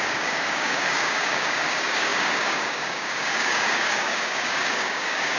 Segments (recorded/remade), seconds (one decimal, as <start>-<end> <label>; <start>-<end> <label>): 0.0-5.4 remade